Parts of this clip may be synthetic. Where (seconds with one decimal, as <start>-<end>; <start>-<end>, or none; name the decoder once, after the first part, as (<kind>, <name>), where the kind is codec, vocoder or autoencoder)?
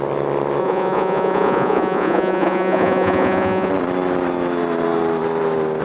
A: 0.6-3.7 (vocoder, Vocos)